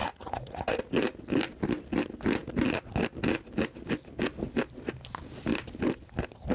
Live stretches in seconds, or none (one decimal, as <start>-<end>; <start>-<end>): 0.8-6.5